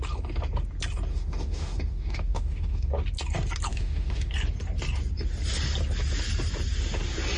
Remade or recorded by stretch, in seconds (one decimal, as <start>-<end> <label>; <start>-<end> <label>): 0.0-1.1 recorded; 1.1-2.9 remade; 2.9-3.7 recorded; 3.7-4.3 remade; 4.3-7.4 recorded